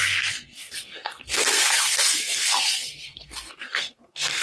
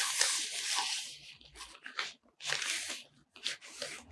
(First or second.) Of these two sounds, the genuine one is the second